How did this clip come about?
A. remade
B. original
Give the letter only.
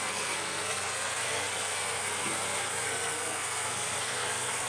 A